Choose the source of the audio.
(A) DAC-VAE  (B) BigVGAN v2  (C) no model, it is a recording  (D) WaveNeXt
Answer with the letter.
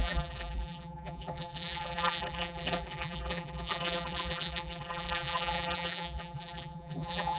B